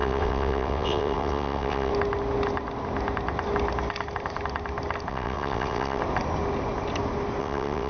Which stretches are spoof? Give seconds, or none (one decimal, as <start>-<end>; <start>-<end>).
0.0-1.9; 5.1-6.0; 7.4-7.9